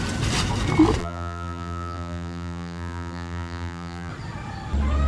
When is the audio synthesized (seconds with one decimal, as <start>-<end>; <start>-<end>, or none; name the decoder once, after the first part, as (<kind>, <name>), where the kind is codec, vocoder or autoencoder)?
1.0-4.1 (vocoder, BigVGAN v2)